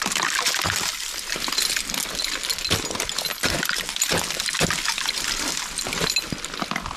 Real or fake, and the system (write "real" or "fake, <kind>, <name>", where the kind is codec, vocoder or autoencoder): real